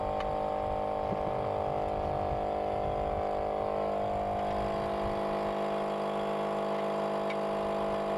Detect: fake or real real